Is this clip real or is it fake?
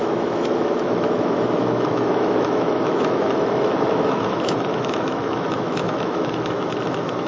fake